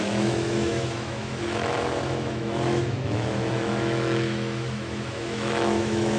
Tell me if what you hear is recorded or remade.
remade